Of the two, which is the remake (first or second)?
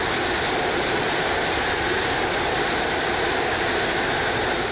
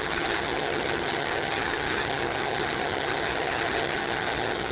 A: second